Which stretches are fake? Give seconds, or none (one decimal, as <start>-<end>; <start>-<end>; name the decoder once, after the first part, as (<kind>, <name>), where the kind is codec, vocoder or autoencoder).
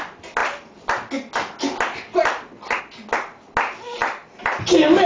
none